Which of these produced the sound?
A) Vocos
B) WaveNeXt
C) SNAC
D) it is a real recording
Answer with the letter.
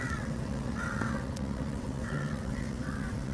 B